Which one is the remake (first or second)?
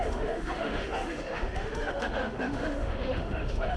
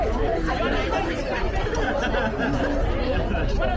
first